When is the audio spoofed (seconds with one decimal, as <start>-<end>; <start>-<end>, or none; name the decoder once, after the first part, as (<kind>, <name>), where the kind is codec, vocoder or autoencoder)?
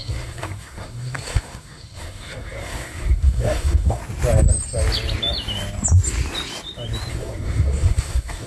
0.0-4.0 (codec, SNAC); 7.1-8.5